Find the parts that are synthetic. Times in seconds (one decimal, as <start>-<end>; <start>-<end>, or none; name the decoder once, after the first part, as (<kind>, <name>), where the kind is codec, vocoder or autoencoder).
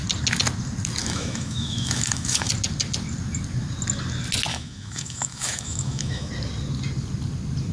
1.0-2.5 (autoencoder, DAC-VAE); 4.5-6.3